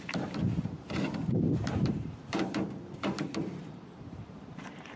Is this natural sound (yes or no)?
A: no